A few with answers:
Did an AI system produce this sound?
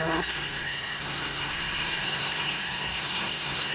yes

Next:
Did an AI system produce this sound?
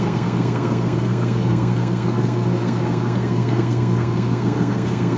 yes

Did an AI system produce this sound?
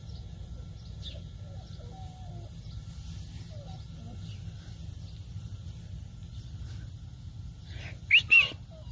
no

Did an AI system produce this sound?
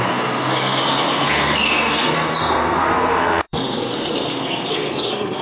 yes